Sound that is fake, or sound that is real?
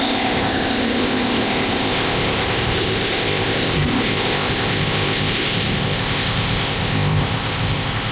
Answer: fake